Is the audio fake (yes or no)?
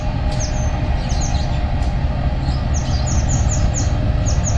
no